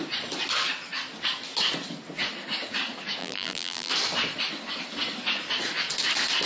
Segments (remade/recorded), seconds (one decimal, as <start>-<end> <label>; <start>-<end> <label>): 0.0-3.2 recorded; 3.2-3.9 remade; 3.9-6.5 recorded